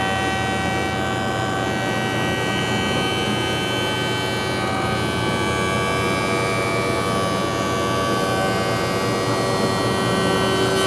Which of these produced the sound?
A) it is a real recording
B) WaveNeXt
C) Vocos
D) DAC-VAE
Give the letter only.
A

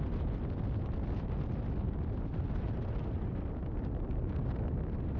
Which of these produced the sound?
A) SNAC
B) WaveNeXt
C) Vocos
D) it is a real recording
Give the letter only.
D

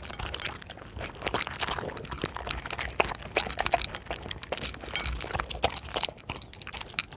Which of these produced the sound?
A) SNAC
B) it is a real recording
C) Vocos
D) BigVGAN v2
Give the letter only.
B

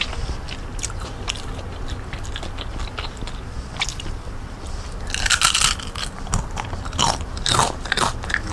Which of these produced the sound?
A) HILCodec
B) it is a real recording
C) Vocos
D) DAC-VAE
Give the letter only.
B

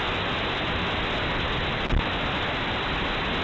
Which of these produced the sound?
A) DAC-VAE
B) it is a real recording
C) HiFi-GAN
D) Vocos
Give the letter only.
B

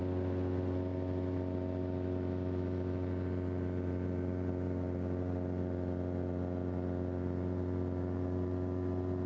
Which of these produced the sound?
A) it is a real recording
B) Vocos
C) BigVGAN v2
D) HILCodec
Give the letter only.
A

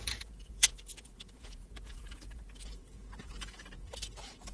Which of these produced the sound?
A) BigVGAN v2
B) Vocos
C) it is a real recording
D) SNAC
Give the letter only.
B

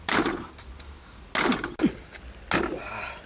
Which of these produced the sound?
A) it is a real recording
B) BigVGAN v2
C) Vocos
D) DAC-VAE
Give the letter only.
A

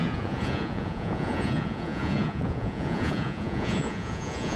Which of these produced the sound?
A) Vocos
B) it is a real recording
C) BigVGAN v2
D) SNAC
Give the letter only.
A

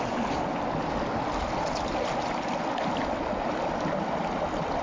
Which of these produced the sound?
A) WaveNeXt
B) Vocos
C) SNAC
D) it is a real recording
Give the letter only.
D